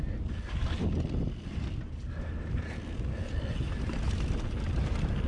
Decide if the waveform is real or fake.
real